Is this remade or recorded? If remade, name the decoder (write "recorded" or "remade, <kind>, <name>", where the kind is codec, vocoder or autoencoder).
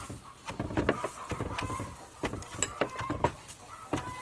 recorded